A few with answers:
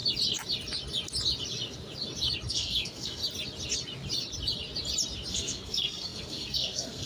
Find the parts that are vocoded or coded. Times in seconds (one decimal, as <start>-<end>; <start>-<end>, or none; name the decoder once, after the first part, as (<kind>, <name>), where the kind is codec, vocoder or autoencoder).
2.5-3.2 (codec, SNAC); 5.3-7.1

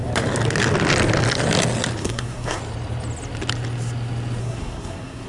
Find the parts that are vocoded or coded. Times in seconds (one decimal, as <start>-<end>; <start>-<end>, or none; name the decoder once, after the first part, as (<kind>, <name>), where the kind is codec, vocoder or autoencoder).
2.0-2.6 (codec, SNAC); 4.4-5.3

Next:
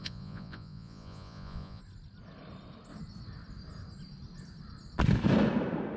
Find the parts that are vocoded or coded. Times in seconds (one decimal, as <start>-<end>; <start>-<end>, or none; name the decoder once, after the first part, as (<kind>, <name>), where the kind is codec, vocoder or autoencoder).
0.0-1.8 (vocoder, Vocos)